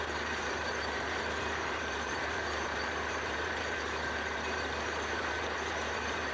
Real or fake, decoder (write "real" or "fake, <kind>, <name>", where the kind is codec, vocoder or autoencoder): fake, vocoder, BigVGAN v2